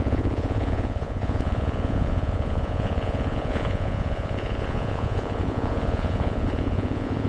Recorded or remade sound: remade